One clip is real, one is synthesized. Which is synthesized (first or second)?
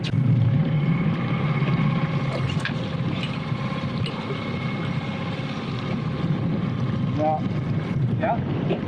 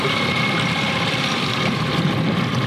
second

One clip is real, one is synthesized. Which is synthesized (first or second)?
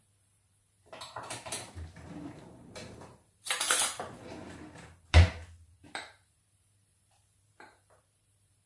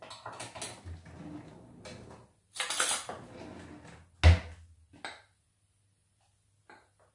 first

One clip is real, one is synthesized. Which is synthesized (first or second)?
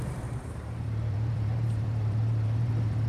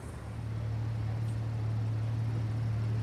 first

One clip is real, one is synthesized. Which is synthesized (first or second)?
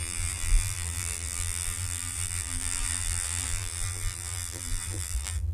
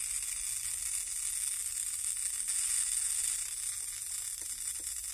first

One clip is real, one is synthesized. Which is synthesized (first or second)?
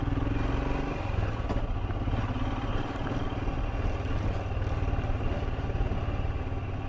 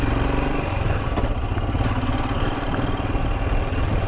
second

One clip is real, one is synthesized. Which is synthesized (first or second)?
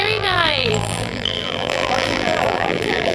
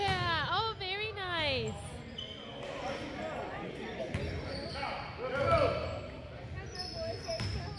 first